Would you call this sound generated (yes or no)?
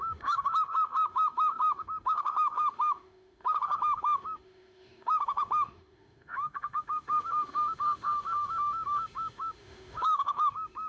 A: yes